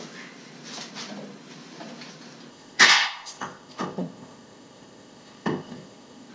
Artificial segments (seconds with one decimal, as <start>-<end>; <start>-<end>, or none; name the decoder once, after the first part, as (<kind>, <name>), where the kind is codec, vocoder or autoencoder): 2.5-6.3 (codec, ZipCodec)